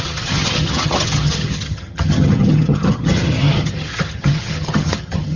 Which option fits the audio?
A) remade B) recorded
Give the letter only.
A